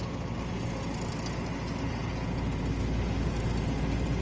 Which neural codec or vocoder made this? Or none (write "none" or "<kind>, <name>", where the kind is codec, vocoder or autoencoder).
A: none